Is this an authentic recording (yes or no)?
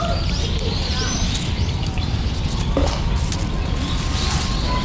yes